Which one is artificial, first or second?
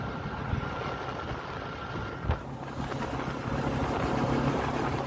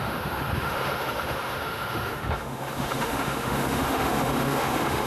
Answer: second